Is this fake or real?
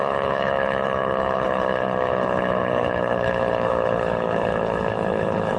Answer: fake